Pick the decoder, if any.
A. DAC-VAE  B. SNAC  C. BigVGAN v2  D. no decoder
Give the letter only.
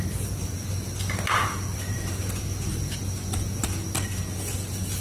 D